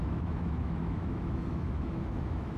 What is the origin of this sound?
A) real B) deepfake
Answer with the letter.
B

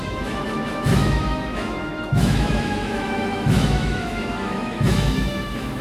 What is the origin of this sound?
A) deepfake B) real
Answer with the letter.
A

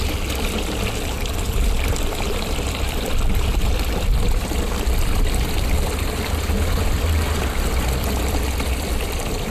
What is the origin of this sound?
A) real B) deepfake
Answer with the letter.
A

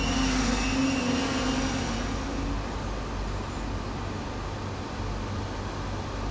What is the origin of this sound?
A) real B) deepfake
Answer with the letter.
A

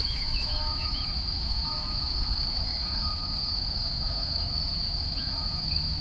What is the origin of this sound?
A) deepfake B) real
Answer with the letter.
A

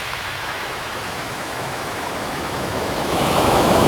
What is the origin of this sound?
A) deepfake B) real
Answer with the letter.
A